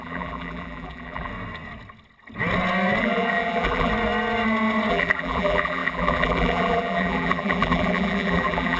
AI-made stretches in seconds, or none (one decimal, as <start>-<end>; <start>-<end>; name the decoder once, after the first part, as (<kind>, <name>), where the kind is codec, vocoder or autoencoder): 0.0-1.3 (vocoder, BigVGAN v2); 3.0-3.9; 4.9-8.8